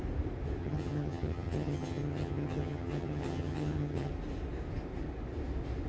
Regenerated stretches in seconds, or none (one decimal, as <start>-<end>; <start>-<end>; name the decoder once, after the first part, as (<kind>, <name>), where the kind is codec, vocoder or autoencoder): 0.6-4.1 (vocoder, HiFi-GAN)

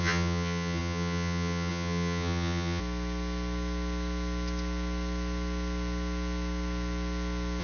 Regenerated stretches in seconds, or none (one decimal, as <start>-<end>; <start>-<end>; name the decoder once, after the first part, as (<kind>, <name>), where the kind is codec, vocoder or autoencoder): 0.0-2.8 (vocoder, HiFi-GAN)

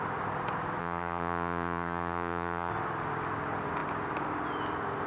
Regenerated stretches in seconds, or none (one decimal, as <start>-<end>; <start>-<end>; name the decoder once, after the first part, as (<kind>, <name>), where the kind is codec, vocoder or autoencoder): 0.8-2.7 (vocoder, HiFi-GAN)

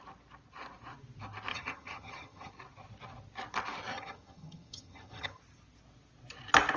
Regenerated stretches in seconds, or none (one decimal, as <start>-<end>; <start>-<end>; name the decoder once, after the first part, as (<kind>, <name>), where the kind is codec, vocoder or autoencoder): 1.5-2.5 (vocoder, HiFi-GAN); 3.9-5.4

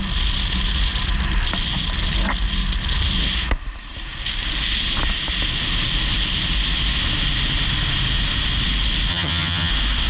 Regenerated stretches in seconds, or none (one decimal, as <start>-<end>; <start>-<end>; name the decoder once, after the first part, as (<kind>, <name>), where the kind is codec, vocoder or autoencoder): 9.1-9.7 (vocoder, HiFi-GAN)

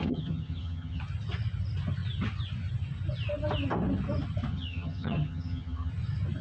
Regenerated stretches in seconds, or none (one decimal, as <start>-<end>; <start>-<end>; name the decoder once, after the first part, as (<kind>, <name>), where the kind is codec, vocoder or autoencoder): 0.0-1.0 (vocoder, HiFi-GAN); 4.5-5.9

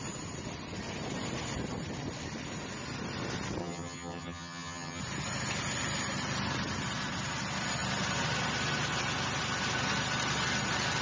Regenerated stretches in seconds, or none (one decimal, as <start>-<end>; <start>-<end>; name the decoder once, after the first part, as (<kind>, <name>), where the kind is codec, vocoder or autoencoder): 3.6-5.0 (vocoder, HiFi-GAN)

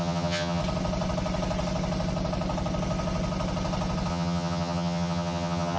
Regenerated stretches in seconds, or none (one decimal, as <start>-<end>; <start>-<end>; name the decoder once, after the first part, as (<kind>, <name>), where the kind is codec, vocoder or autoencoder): 0.0-0.6 (vocoder, HiFi-GAN); 4.1-5.8